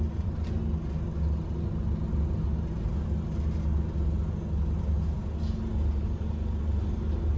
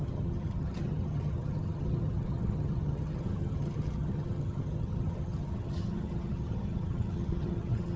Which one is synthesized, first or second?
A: second